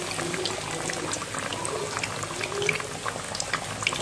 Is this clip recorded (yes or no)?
yes